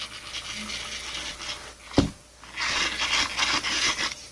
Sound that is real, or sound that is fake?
real